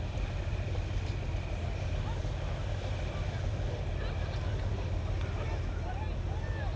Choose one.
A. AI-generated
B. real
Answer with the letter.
B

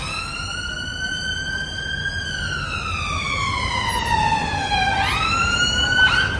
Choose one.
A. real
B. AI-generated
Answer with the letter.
A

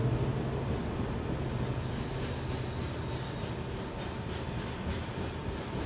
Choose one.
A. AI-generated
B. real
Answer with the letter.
B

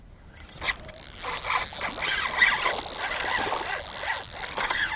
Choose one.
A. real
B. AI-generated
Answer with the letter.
A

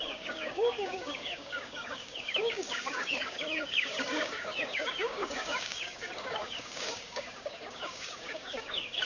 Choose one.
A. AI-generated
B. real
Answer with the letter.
A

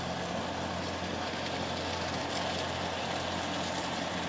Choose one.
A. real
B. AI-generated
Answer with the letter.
A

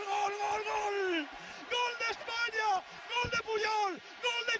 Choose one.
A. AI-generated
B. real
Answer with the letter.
B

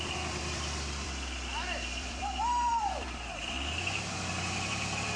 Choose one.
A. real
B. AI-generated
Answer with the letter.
B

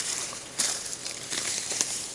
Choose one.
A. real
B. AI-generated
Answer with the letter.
B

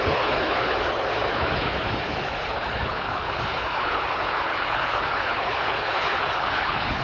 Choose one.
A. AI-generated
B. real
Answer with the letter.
A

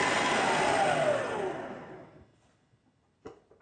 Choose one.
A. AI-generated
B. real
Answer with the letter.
B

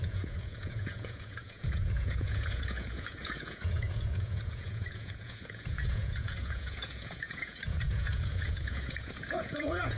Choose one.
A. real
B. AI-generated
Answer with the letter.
B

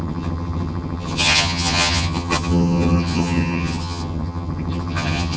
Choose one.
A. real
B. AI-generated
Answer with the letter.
B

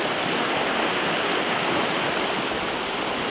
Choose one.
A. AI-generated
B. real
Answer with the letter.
B